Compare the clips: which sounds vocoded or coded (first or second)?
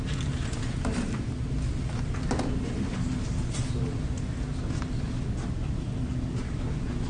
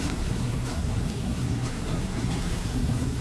second